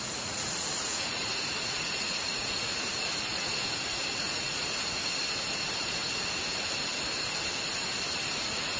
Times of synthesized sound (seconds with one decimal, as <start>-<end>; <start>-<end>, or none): 0.0-5.2; 8.4-8.8